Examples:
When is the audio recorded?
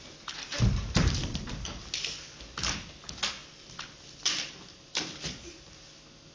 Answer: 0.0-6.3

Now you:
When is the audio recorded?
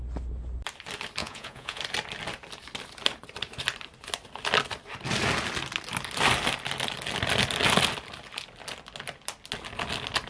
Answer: 0.0-1.2; 1.8-10.3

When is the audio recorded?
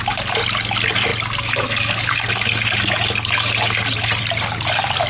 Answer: 0.0-5.1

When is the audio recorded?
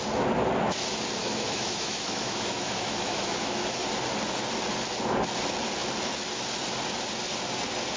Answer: 0.0-1.2; 3.6-8.0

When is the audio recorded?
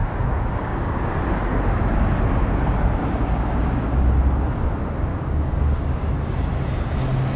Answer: 1.2-3.0; 4.0-5.1; 6.3-7.4